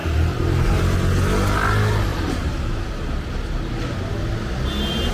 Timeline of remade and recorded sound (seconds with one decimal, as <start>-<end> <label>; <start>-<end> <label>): 0.0-0.8 remade; 0.8-2.1 recorded; 2.1-3.1 remade; 3.1-5.1 recorded